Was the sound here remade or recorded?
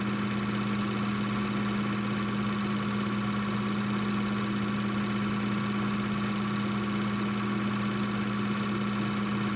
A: recorded